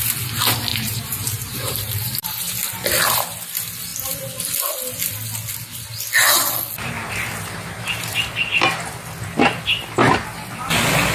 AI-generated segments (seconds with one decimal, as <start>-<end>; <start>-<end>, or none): 0.7-2.5